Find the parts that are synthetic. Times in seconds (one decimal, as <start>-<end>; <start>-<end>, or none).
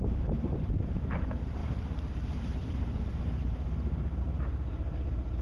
0.0-5.4